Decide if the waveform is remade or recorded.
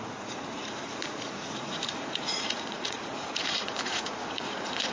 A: remade